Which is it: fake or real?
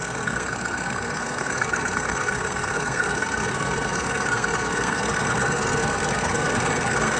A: fake